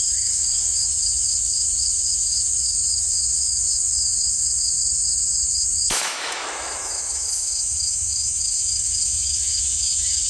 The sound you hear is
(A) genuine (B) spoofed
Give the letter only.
B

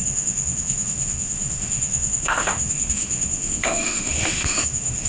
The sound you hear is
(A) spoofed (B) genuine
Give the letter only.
A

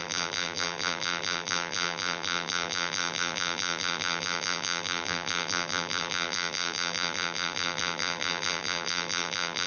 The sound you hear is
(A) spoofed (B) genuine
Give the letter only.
A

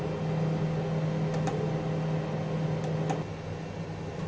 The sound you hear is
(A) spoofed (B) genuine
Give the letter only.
B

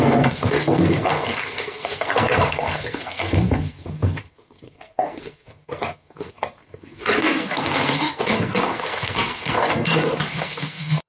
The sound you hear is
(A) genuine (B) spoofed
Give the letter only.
B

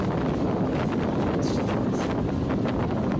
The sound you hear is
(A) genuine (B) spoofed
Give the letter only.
A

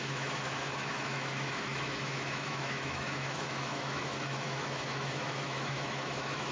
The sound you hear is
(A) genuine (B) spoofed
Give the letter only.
B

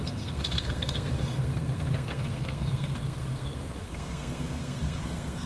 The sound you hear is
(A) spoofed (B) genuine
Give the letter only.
A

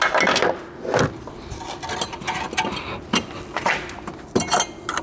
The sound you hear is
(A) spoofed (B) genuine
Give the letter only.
B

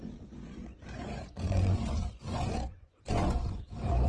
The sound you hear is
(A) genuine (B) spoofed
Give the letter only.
B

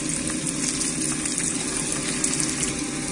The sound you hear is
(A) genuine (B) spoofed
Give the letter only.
A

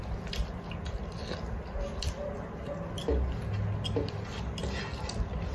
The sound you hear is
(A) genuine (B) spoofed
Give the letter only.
A